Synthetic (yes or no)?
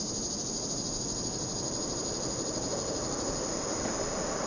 no